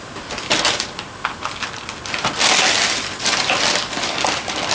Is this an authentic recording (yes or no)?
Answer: yes